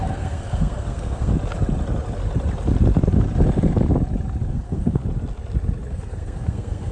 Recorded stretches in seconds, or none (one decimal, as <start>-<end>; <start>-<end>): 1.3-4.5; 5.0-5.9

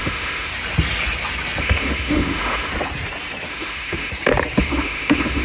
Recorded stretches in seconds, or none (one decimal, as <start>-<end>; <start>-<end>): 0.5-1.6; 2.7-3.5; 4.1-4.6

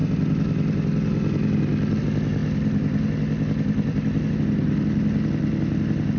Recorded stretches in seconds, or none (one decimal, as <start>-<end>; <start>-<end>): 0.0-6.2

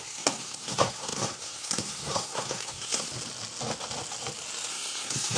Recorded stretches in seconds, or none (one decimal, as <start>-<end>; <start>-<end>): 3.1-4.7

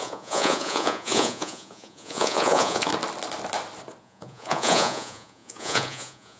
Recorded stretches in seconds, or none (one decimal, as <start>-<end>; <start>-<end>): 2.9-4.0

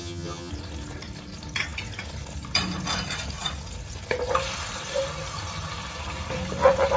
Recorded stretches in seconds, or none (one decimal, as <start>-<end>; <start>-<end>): 0.5-7.0